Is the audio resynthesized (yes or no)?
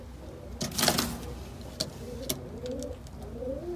no